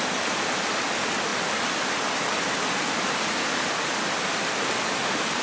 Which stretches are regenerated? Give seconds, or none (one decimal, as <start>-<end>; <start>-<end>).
none